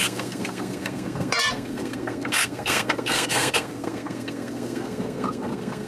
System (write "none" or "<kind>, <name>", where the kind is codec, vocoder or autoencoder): codec, SNAC